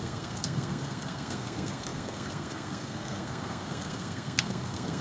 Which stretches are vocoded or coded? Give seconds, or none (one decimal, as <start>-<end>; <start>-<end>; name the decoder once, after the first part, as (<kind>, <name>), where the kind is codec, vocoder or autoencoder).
0.0-5.0 (codec, SNAC)